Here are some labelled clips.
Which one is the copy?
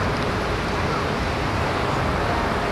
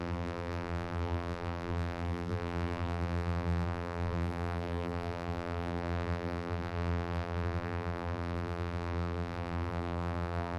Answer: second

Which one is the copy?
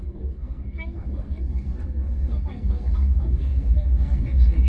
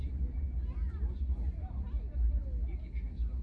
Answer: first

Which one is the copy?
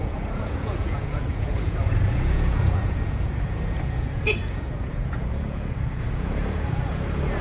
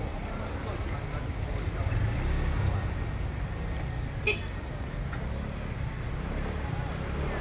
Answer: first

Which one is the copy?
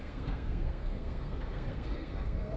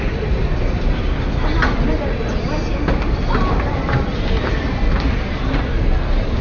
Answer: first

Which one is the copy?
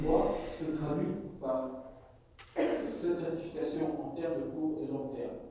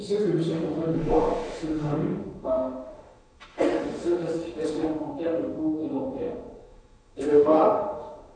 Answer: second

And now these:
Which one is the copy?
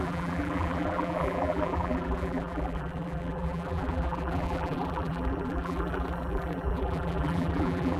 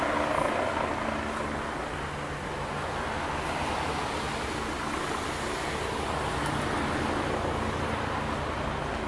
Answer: first